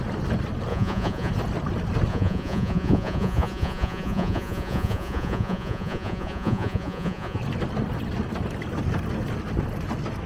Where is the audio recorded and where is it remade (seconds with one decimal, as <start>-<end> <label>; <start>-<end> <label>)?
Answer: 0.0-0.7 recorded; 0.7-1.3 remade; 1.3-2.1 recorded; 2.1-7.4 remade; 7.4-10.3 recorded